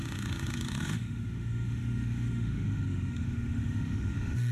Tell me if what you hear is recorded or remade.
remade